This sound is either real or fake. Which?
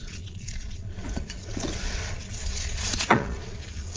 fake